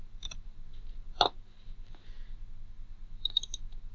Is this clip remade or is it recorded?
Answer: recorded